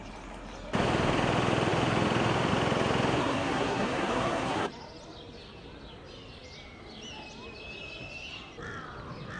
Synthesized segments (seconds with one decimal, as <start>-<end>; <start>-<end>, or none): 3.2-4.7